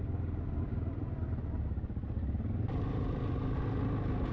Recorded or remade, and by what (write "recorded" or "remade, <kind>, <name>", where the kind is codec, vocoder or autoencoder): recorded